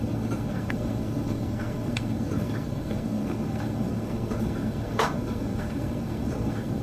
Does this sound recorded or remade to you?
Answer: remade